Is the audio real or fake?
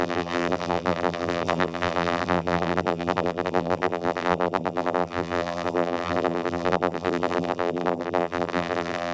fake